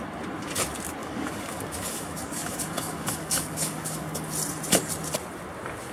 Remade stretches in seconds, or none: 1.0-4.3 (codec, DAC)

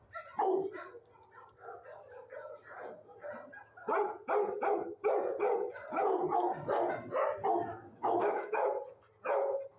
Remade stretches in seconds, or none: 7.7-8.7 (codec, DAC)

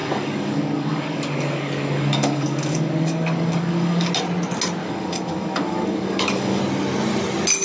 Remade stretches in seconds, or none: 0.0-4.1 (codec, DAC); 4.8-6.6

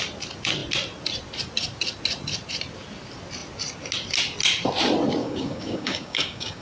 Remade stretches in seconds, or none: 5.2-6.6 (codec, DAC)

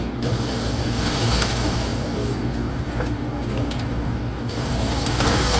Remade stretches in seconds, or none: 0.0-5.6 (codec, DAC)

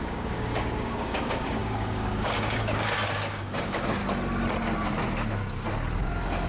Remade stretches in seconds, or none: 0.0-4.0 (codec, DAC)